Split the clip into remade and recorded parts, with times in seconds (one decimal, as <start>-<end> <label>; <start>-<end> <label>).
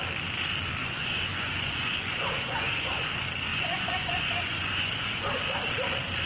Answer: 0.0-0.8 recorded; 0.8-3.1 remade; 3.1-3.5 recorded; 3.5-5.4 remade; 5.4-6.3 recorded